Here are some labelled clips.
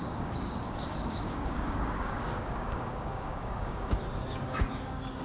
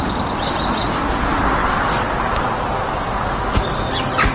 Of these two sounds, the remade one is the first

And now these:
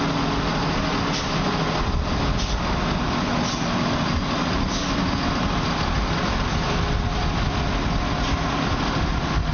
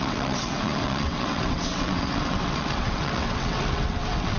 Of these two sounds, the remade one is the second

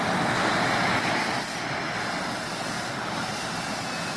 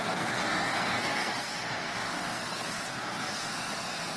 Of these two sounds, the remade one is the second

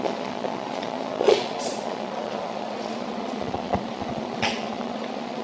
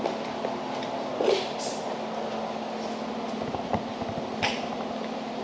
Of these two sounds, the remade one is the first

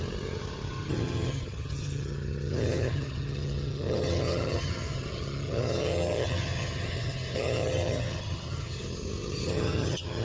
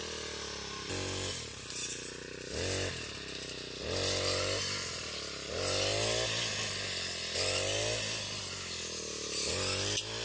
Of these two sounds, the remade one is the first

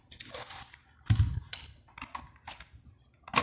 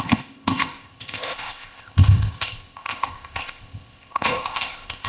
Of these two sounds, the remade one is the second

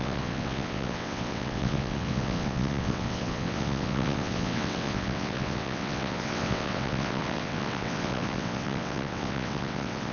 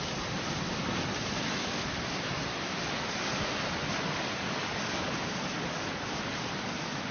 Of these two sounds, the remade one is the first